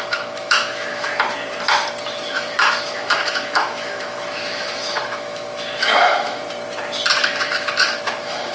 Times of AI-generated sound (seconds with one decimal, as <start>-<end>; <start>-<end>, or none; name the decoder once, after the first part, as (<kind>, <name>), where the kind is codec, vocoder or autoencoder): 0.0-1.1 (autoencoder, DAC-VAE); 2.0-6.4; 7.2-8.5